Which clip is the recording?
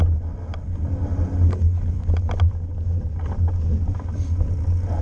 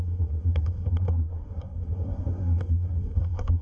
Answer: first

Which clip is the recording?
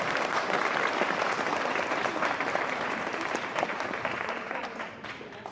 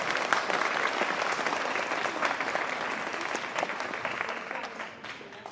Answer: second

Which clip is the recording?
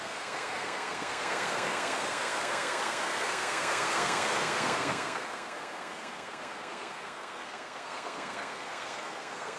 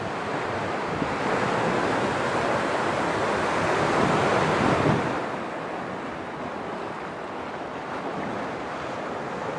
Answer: second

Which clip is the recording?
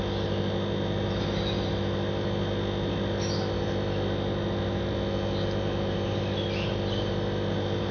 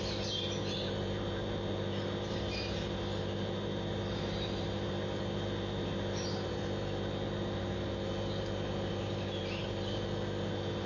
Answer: first